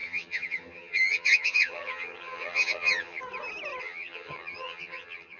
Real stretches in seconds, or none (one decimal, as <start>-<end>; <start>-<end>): 3.2-3.8